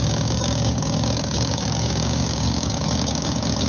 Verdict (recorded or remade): remade